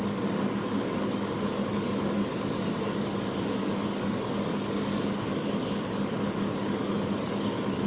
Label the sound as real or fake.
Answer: fake